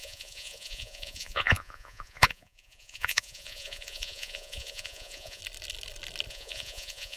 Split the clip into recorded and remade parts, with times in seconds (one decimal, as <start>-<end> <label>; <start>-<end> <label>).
0.0-5.4 remade; 5.4-6.3 recorded; 6.3-7.2 remade